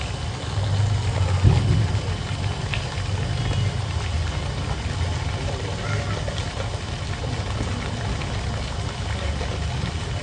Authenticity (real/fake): real